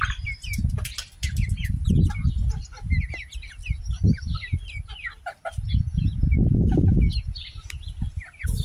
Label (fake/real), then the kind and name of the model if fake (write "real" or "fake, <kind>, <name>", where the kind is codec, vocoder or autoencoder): real